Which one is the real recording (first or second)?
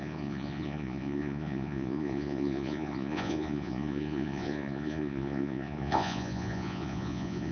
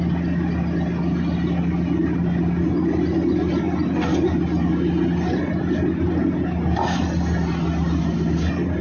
second